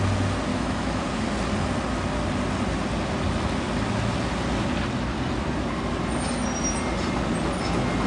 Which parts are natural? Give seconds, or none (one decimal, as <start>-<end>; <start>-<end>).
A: 0.0-0.5; 1.0-8.1